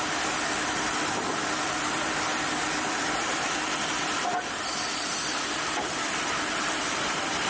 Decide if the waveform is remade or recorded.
remade